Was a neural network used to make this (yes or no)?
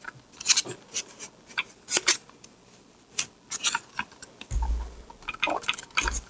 no